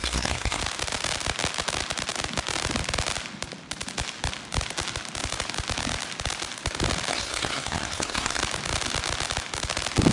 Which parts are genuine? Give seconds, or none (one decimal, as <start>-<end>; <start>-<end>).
0.6-7.1; 8.4-10.1